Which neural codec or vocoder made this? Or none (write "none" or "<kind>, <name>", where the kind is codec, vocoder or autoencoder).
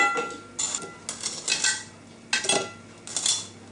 none